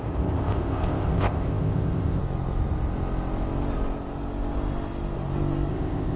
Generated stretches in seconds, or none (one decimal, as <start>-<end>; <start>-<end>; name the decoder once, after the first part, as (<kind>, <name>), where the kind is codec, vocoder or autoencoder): 0.0-2.2 (codec, ZipCodec); 5.7-6.2